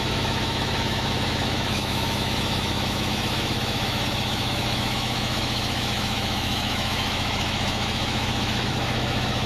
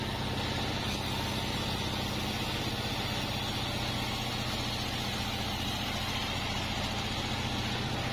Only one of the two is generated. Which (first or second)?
first